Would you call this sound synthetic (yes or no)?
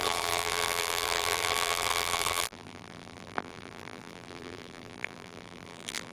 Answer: yes